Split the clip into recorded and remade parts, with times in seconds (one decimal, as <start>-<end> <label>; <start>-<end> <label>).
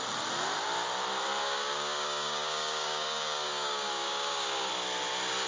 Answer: 0.0-1.4 recorded; 1.4-4.7 remade; 4.7-5.5 recorded